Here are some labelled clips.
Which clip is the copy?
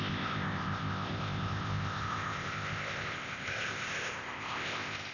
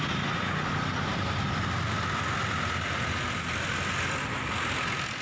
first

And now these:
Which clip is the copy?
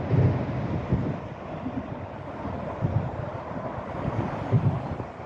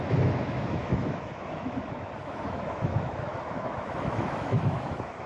second